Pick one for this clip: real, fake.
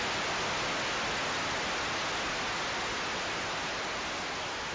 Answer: real